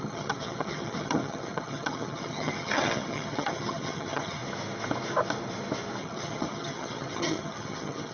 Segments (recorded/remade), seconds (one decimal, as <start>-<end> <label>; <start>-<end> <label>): 0.0-4.4 remade; 4.4-6.0 recorded; 6.0-8.1 remade